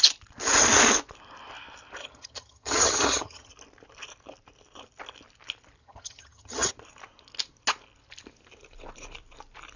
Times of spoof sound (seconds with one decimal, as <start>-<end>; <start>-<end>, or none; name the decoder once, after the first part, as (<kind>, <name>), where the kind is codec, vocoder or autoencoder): 2.0-3.5 (vocoder, HiFi-GAN); 5.8-6.7